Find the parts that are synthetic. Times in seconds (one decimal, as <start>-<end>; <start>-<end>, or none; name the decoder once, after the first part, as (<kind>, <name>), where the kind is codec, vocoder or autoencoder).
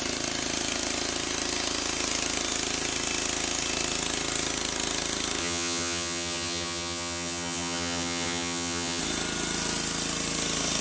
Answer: 5.4-9.0 (vocoder, HiFi-GAN)